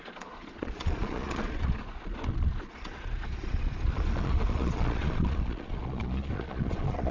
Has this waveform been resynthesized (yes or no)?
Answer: yes